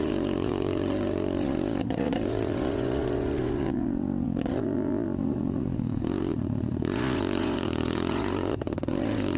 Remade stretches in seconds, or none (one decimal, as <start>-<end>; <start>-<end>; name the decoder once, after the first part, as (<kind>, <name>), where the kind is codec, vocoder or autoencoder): 0.0-9.4 (vocoder, Vocos)